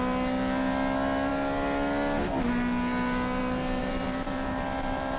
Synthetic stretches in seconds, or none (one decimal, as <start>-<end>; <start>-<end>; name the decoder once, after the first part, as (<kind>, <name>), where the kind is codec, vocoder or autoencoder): 3.8-5.2 (vocoder, BigVGAN v2)